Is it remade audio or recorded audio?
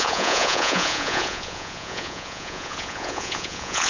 remade